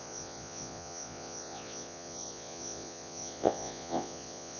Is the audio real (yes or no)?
no